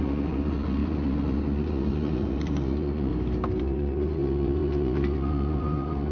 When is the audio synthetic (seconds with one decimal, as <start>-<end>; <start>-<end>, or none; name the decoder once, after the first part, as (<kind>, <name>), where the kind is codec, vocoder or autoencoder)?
0.0-3.1 (vocoder, Vocos); 3.6-6.1